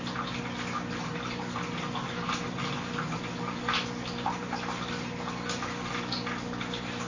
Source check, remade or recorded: recorded